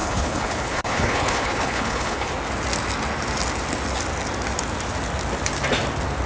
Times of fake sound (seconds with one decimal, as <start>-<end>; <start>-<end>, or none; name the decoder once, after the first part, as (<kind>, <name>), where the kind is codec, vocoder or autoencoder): 0.0-2.3 (codec, HILCodec)